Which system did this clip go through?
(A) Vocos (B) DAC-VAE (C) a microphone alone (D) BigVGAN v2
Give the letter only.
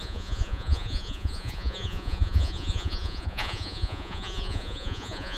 A